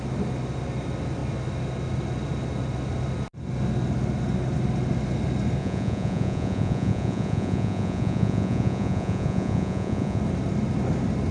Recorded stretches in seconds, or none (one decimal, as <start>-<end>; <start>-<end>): 0.0-5.6; 10.2-11.3